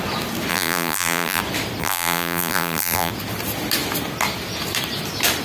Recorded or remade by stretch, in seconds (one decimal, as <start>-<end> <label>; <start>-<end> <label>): 0.0-0.5 recorded; 0.5-1.4 remade; 1.4-1.8 recorded; 1.8-3.1 remade; 3.1-5.4 recorded